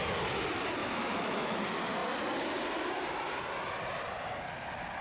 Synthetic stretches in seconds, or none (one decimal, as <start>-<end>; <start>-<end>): 0.8-1.6